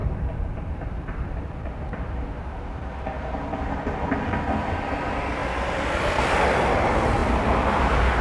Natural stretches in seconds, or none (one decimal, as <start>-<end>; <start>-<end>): 2.3-7.2; 7.7-8.2